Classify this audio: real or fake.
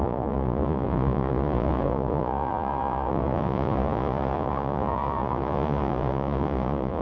fake